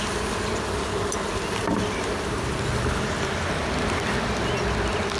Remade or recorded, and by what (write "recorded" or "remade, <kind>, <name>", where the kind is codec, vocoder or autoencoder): recorded